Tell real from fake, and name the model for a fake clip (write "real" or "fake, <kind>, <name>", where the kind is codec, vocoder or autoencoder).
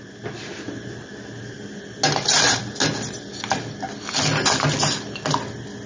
real